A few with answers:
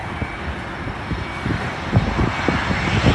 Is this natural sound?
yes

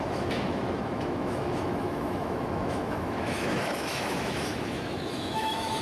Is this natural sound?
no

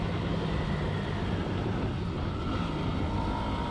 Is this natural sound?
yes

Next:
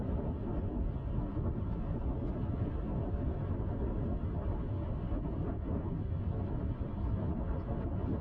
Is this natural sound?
yes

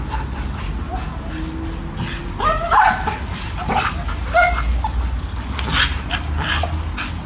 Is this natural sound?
yes